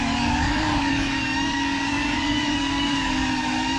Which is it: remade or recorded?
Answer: remade